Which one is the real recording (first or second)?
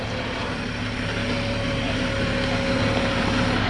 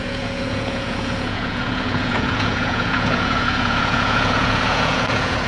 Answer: first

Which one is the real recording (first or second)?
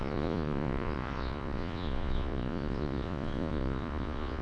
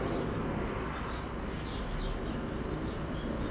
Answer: second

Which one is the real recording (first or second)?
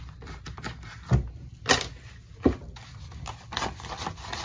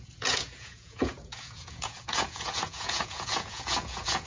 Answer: first